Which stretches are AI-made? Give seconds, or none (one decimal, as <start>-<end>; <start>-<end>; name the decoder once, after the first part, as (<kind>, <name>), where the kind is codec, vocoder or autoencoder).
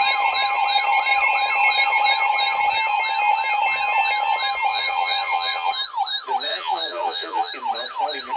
4.7-5.7 (vocoder, Vocos); 6.5-7.5